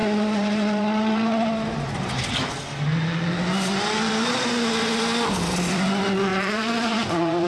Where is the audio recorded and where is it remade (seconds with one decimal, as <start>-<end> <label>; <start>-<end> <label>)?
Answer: 0.0-2.6 remade; 2.6-3.5 recorded; 3.5-4.3 remade; 4.3-6.3 recorded; 6.3-7.5 remade